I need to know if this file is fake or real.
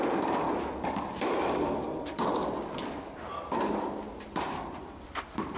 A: real